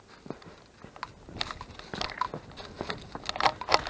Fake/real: real